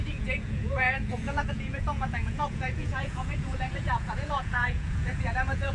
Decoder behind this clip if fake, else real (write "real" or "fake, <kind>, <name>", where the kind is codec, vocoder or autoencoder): fake, vocoder, Vocos